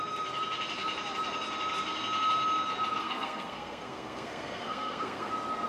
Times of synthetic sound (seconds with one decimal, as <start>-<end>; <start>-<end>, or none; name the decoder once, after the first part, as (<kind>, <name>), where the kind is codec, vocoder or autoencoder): 3.0-5.3 (codec, SNAC)